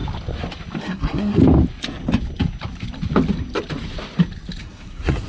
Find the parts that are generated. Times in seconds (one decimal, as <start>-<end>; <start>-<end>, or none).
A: 0.8-1.4; 4.6-5.3

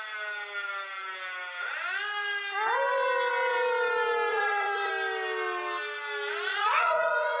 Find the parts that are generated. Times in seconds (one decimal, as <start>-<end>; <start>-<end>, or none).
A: 4.3-4.9; 6.5-7.4

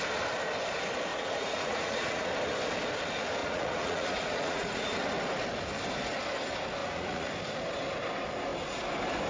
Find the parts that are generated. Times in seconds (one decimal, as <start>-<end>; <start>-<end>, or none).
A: 1.1-2.3; 3.4-4.9; 6.8-7.3

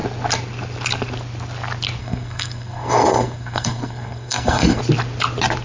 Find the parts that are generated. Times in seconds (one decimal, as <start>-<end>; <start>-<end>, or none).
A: 2.0-4.8